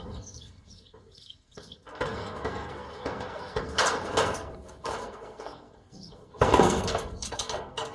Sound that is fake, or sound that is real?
fake